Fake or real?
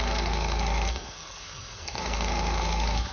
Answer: fake